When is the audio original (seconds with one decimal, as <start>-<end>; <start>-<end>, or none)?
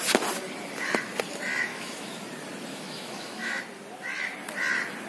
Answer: 0.0-1.7; 2.2-2.7; 3.6-5.1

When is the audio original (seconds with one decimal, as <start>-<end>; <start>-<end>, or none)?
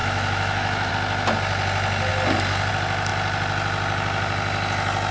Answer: 0.9-5.1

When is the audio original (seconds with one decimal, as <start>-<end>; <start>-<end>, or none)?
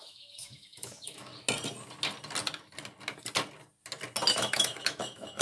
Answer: 1.3-4.3